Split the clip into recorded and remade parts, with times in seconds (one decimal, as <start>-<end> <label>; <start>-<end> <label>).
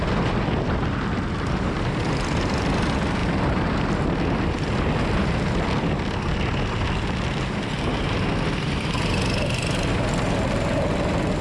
0.0-3.2 recorded; 3.2-3.9 remade; 3.9-11.4 recorded